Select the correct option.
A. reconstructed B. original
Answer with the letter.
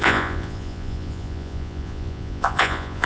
A